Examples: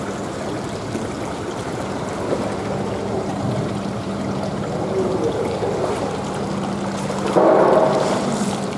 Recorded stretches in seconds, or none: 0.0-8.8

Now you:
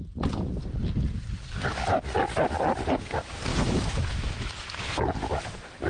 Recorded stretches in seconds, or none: 0.0-3.5; 5.0-5.9